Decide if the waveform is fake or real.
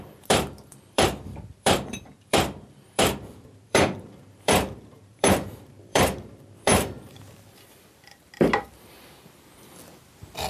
fake